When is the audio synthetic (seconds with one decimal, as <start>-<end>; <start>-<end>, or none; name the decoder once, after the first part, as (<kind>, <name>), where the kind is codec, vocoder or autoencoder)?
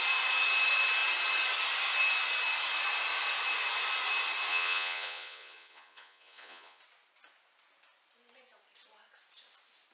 4.5-6.8 (vocoder, Vocos)